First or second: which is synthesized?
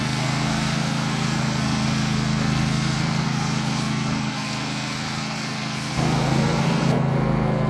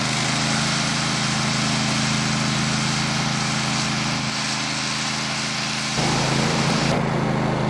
first